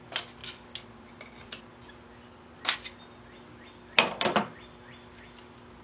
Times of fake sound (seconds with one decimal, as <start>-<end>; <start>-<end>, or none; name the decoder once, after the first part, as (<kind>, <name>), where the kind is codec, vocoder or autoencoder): none